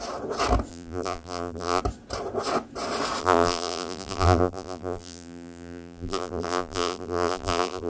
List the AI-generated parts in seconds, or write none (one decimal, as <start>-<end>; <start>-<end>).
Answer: 0.7-1.8; 3.2-7.9